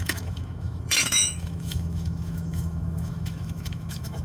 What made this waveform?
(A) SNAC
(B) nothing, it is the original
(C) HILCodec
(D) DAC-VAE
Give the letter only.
D